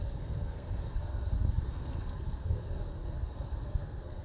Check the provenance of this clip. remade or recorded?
remade